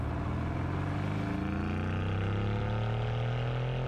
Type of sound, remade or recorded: recorded